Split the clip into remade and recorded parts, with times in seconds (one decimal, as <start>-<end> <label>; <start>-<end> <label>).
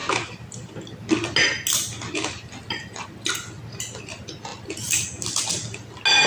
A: 0.0-0.7 remade; 0.7-6.3 recorded